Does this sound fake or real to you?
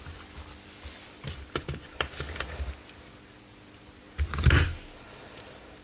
real